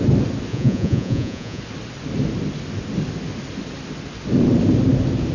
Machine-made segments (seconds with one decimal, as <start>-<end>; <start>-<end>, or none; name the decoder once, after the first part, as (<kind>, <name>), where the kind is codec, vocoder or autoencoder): 0.5-1.6 (vocoder, Vocos)